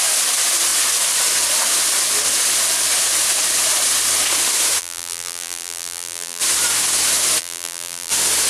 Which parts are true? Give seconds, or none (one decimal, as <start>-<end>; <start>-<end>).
0.0-4.8; 6.4-7.4; 8.1-8.5